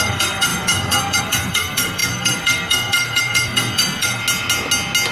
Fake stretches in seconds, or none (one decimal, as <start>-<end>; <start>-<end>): 0.0-4.2